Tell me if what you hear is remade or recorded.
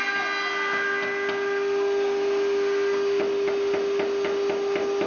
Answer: recorded